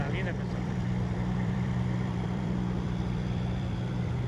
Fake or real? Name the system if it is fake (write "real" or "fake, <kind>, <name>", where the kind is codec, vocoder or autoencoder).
fake, vocoder, BigVGAN v2